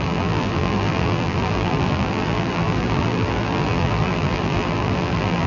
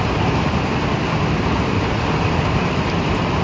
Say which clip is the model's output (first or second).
first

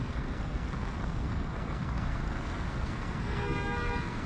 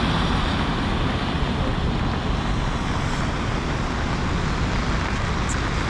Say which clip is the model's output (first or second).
first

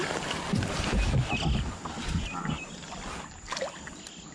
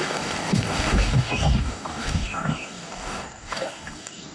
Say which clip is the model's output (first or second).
second